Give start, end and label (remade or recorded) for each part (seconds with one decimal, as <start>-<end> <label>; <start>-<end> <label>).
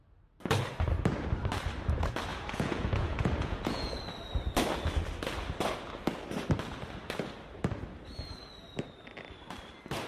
0.0-2.3 recorded; 2.3-4.0 remade; 4.0-10.1 recorded